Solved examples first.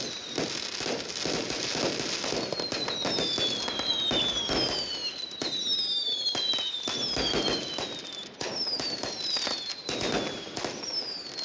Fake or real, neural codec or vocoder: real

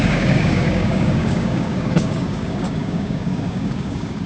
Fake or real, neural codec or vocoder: fake, codec, DAC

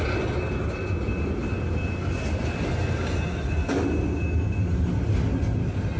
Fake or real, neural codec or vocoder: real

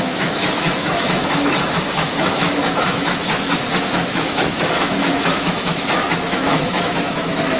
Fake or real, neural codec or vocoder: fake, autoencoder, DAC-VAE